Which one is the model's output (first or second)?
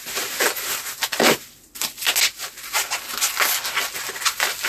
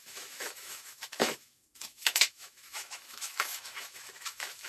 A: second